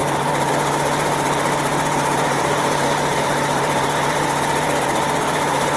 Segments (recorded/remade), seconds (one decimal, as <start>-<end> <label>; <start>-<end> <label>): 0.0-5.8 remade

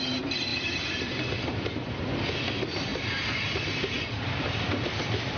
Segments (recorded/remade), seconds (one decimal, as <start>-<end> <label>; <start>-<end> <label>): 0.0-0.5 recorded; 0.5-2.0 remade; 2.0-2.9 recorded; 2.9-5.4 remade

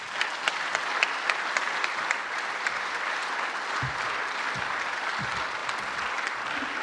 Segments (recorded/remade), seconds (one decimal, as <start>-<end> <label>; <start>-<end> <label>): 0.0-5.6 remade; 5.6-6.8 recorded

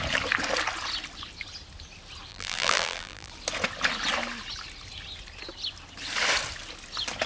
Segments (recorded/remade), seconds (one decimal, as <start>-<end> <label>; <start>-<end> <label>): 0.0-2.3 recorded; 2.3-3.3 remade; 3.3-7.3 recorded

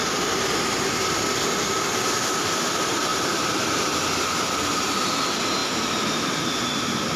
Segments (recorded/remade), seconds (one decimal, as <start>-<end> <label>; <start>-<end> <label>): 0.0-1.7 remade; 1.7-3.1 recorded; 3.1-4.7 remade; 4.7-7.2 recorded

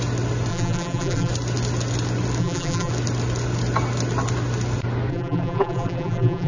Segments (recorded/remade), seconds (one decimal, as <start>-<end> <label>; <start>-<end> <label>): 0.0-0.5 recorded; 0.5-1.3 remade; 1.3-2.4 recorded; 2.4-2.9 remade; 2.9-5.1 recorded; 5.1-6.5 remade

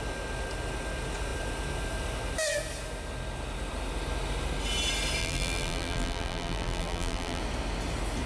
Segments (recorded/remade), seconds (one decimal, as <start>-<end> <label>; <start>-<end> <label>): 0.0-5.2 recorded; 5.2-7.4 remade; 7.4-8.3 recorded